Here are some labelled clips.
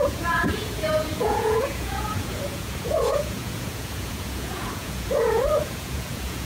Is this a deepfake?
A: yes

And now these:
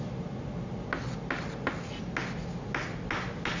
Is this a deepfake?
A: no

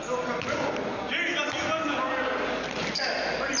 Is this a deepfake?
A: no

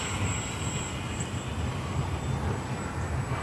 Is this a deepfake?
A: no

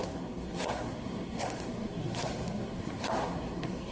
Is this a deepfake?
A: yes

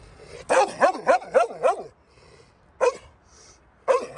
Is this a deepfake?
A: no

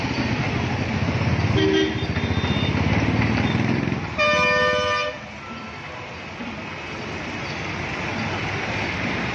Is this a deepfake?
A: no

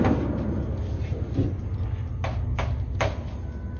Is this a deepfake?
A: no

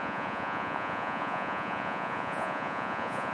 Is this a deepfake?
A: yes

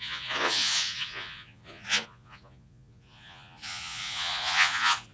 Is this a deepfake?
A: yes